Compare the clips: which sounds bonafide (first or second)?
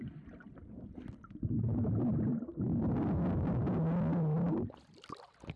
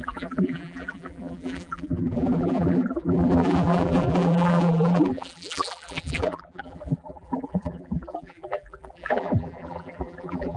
first